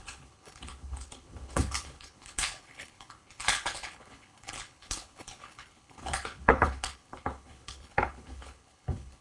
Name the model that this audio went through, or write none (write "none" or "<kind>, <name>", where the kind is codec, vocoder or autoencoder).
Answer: codec, HILCodec